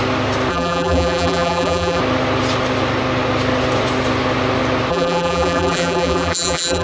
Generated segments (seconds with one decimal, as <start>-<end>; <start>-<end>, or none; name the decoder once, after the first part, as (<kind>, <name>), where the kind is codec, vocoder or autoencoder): 0.5-2.0 (vocoder, BigVGAN v2); 4.9-6.8